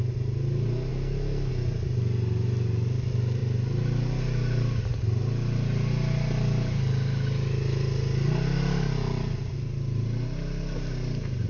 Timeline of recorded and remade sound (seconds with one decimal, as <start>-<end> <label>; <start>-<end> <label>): 0.0-0.9 recorded; 0.9-1.5 remade; 1.5-11.5 recorded